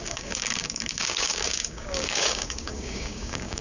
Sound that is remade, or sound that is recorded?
remade